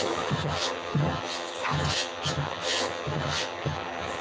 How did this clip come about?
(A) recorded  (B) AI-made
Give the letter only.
B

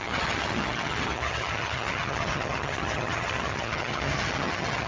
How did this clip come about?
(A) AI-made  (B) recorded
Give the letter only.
A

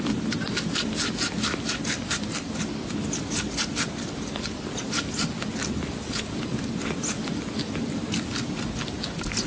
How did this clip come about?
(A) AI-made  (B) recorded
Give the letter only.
B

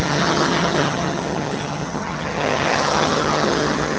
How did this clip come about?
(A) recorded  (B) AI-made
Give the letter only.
B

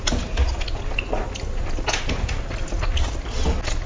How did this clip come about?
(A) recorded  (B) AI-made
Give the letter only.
A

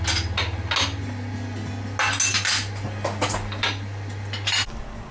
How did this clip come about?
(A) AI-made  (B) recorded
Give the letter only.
B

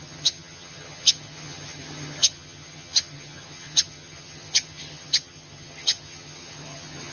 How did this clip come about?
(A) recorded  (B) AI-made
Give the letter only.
B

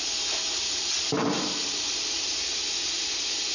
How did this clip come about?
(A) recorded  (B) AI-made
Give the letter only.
A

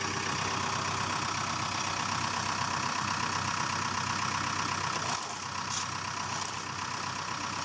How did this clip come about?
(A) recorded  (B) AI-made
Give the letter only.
A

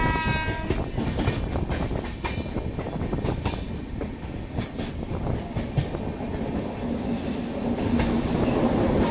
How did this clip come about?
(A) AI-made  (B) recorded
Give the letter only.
B